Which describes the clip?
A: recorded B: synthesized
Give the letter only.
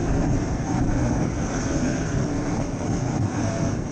B